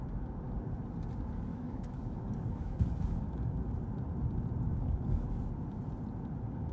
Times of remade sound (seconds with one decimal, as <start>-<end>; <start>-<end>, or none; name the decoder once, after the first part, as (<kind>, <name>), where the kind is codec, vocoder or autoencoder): 1.5-3.7 (codec, DAC); 4.7-5.4